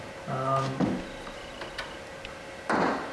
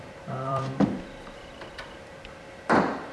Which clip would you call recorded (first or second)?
first